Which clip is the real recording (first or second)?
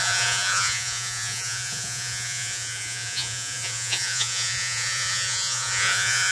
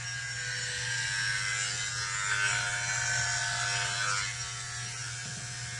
second